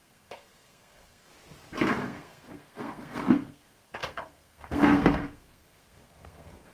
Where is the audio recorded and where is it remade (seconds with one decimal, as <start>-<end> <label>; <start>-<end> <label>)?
0.0-1.3 remade; 1.3-1.9 recorded; 1.9-6.7 remade